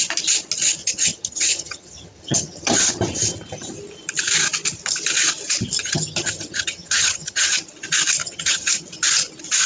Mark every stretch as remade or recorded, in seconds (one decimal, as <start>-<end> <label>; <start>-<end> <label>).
0.0-0.8 recorded; 0.8-2.9 remade; 2.9-5.8 recorded; 5.8-7.6 remade; 7.6-8.2 recorded; 8.2-8.8 remade; 8.8-9.7 recorded